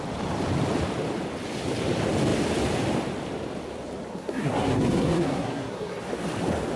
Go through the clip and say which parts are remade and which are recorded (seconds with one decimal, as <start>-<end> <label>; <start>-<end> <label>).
0.0-4.1 recorded; 4.1-6.0 remade; 6.0-6.8 recorded